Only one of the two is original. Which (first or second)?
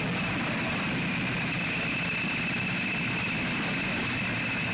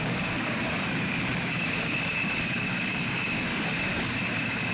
first